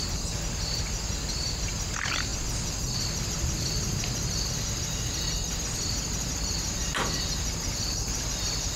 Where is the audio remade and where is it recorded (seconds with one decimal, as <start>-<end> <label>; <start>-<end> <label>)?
0.0-8.8 recorded